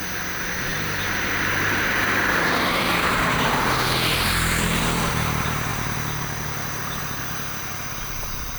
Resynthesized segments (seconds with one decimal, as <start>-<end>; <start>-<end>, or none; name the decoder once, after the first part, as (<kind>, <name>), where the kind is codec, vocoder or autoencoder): 0.0-8.6 (vocoder, BigVGAN v2)

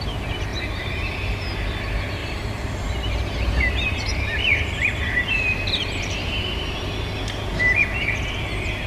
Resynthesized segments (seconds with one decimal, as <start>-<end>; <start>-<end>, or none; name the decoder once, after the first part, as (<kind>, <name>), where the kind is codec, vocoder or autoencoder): 0.5-1.1 (vocoder, BigVGAN v2); 2.2-6.4

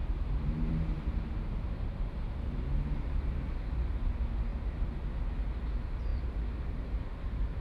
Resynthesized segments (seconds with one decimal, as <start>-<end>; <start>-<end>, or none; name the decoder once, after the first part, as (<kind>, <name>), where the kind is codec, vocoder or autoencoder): 0.0-0.7 (vocoder, BigVGAN v2)